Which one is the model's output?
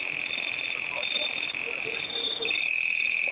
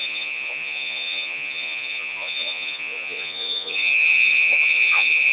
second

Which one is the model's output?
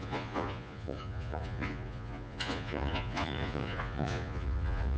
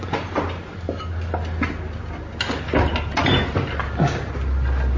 first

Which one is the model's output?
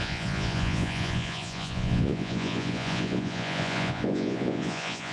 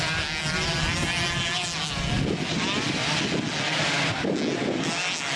first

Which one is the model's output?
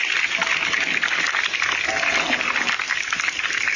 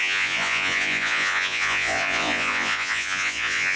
second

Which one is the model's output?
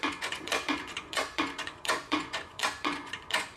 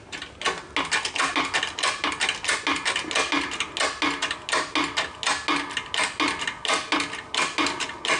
first